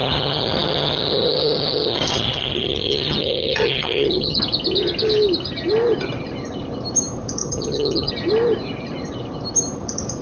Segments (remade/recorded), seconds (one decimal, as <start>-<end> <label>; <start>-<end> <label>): 0.0-4.4 remade; 4.4-7.4 recorded; 7.4-8.1 remade; 8.1-10.2 recorded